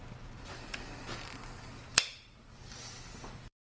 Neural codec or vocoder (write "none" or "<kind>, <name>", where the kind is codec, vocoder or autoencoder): vocoder, BigVGAN v2